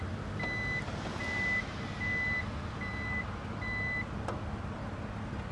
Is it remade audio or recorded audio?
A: recorded